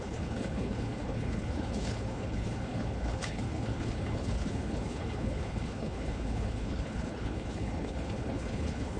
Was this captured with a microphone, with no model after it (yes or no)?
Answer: no